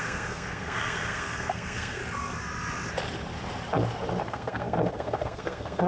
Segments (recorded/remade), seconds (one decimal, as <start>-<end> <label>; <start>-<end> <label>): 0.0-2.0 remade; 2.0-4.2 recorded; 4.2-5.9 remade